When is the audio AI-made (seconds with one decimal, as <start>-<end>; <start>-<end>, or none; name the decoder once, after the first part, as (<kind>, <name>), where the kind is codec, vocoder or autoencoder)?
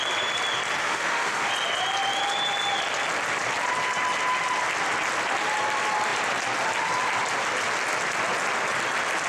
0.8-1.5 (autoencoder, DAC-VAE)